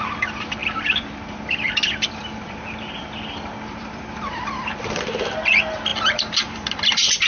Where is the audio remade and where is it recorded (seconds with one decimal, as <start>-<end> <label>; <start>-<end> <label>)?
0.0-0.6 recorded; 0.6-5.0 remade; 5.0-5.9 recorded; 5.9-7.3 remade